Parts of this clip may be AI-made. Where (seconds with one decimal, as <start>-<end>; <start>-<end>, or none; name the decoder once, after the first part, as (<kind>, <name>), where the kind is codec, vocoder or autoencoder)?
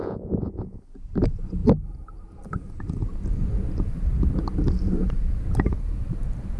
0.0-0.8 (vocoder, Vocos)